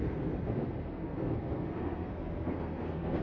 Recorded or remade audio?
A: remade